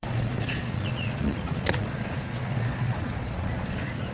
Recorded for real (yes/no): no